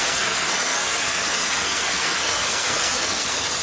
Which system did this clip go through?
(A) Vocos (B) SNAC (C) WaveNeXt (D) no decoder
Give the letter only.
B